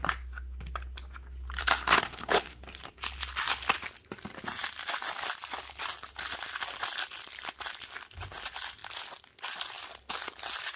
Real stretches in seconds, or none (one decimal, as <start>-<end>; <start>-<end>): 0.0-1.6; 2.6-10.8